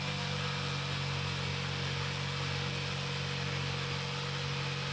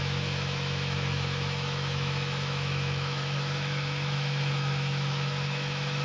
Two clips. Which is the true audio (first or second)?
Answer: first